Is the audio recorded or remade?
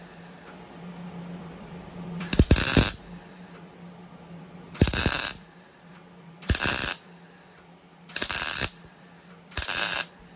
remade